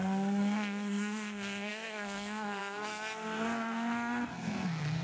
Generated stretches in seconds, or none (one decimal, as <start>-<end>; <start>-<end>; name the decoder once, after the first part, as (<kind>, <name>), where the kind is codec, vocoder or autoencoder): 0.0-5.0 (codec, SNAC)